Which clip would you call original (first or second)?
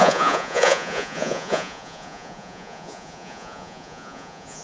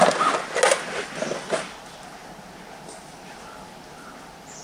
second